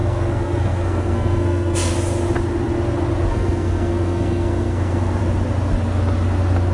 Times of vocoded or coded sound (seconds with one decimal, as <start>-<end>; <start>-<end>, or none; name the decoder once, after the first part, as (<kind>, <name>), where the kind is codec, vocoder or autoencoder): 0.0-1.9 (codec, SNAC); 3.3-5.2